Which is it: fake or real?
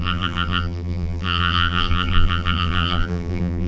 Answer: fake